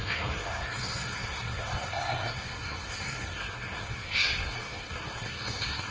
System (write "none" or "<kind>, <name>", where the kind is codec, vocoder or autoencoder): codec, SNAC